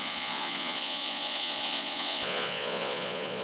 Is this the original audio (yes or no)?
no